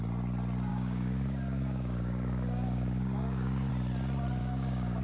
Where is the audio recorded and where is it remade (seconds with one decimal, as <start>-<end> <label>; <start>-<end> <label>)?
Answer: 0.0-0.7 recorded; 0.7-3.7 remade; 3.7-4.4 recorded; 4.4-5.0 remade